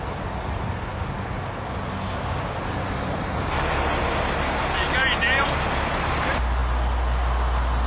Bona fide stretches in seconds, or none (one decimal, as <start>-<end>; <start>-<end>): 0.0-7.9